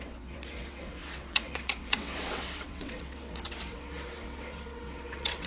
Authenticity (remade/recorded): remade